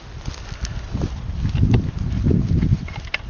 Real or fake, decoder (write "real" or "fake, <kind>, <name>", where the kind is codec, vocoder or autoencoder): real